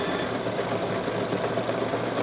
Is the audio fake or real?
real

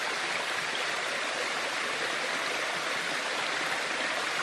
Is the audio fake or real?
real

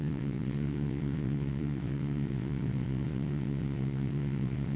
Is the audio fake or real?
fake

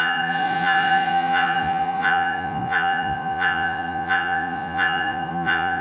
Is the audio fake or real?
fake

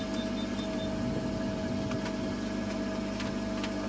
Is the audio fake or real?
real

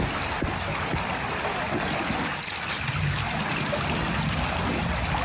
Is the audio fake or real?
real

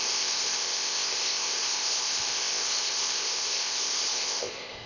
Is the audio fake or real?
fake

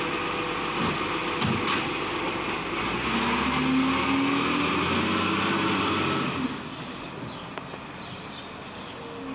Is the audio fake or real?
real